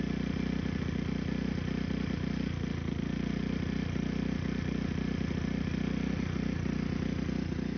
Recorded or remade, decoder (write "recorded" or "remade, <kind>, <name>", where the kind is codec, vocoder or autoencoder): recorded